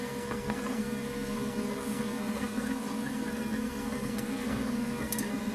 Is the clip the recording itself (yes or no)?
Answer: no